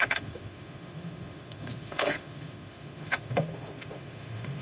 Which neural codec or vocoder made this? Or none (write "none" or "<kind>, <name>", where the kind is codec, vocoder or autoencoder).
autoencoder, DAC-VAE